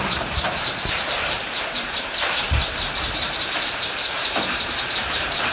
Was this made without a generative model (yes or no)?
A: no